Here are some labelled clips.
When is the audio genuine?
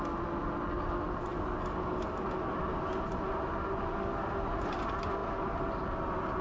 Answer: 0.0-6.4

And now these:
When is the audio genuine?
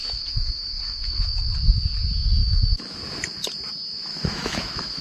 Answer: 1.5-2.4; 3.0-4.1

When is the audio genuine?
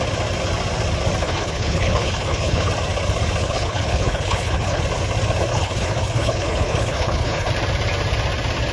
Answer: 0.0-1.2; 2.7-3.4; 4.8-5.5; 7.5-8.7